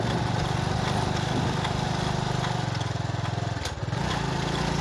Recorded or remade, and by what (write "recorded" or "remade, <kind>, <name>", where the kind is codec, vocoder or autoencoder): recorded